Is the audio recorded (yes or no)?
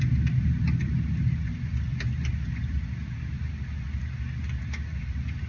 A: yes